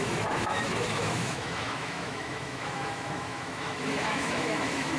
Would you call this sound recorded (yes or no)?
no